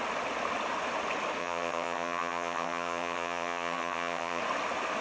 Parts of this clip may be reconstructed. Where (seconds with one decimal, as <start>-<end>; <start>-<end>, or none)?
1.4-4.4